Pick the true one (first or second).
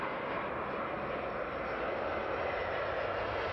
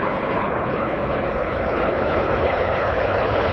first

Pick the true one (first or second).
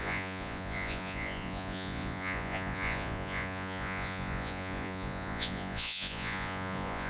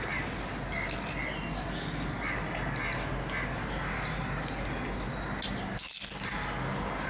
second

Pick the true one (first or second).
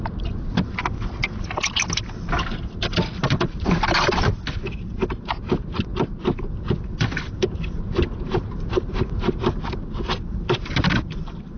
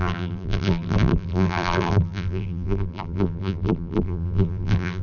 first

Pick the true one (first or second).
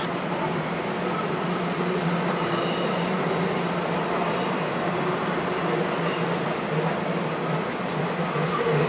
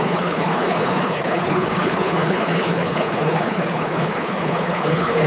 first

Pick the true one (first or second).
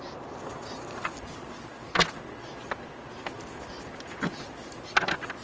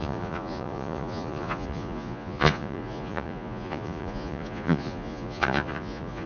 first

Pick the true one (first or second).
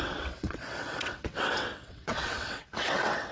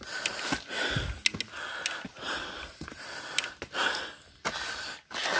second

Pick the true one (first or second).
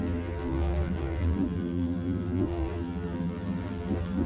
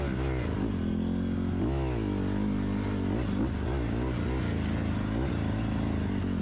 second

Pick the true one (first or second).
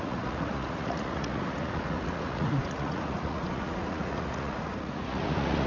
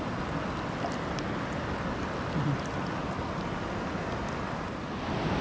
second